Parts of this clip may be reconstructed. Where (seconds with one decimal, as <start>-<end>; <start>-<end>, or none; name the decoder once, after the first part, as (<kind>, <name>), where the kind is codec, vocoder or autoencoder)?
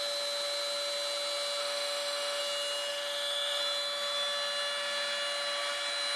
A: 1.6-2.4 (autoencoder, DAC-VAE); 2.9-3.6